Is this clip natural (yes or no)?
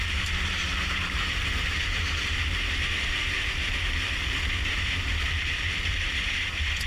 no